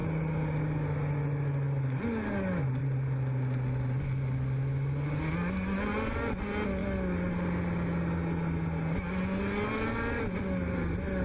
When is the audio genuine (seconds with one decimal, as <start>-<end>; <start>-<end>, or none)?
0.0-11.2